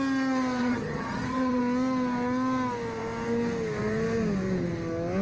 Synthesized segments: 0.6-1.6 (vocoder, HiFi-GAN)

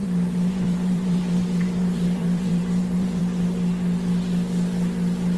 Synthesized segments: 0.0-3.2 (vocoder, BigVGAN v2)

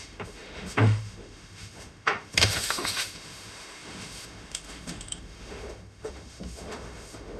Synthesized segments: 0.0-7.4 (autoencoder, DAC-VAE)

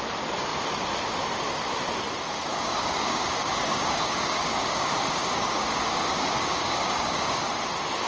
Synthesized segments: 2.5-7.4 (codec, DAC)